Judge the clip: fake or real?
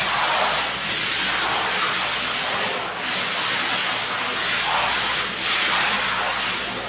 real